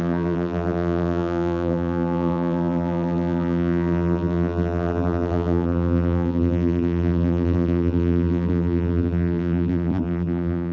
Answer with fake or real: fake